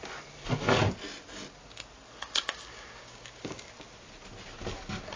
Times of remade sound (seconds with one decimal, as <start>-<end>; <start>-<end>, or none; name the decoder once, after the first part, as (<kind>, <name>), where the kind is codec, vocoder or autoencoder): 2.7-3.7 (codec, DAC)